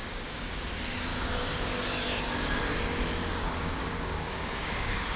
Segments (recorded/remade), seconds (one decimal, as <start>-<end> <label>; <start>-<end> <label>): 0.0-0.5 remade; 0.5-1.1 recorded; 1.1-2.2 remade; 2.2-3.2 recorded; 3.2-5.2 remade